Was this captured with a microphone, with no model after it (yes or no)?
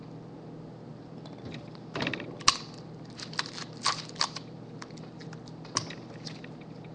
yes